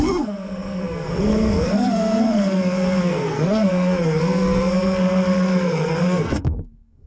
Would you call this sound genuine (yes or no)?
no